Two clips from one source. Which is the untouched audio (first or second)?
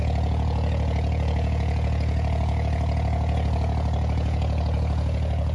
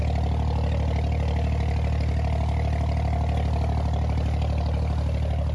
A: second